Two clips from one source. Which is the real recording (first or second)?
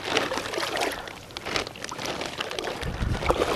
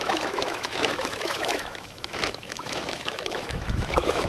first